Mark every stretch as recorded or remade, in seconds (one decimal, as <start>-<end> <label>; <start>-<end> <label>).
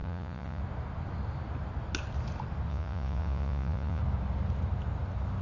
0.0-0.6 remade; 0.6-2.7 recorded; 2.7-4.0 remade; 4.0-5.4 recorded